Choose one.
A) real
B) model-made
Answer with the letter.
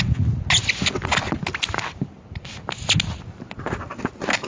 A